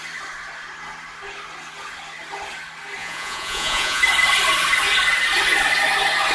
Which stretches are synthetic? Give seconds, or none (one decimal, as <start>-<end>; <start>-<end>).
3.0-4.0